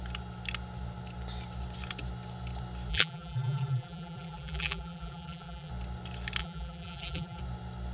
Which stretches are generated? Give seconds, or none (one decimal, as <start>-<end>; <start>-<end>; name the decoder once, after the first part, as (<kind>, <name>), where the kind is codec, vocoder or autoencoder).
2.9-5.7 (vocoder, BigVGAN v2); 6.4-7.4